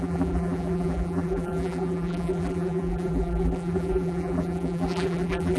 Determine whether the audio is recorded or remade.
remade